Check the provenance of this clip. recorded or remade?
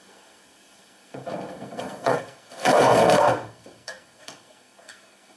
remade